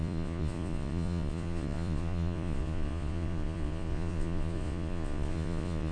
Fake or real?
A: fake